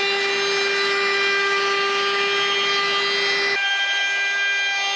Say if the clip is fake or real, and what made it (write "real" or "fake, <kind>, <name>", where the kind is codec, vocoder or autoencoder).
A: real